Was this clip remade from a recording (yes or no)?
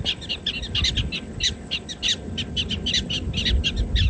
no